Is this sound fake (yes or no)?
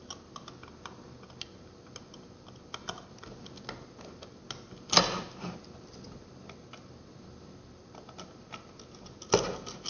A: no